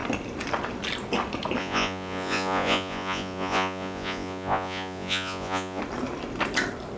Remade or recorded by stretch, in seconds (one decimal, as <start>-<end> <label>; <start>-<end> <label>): 0.0-1.6 recorded; 1.6-5.8 remade; 5.8-7.0 recorded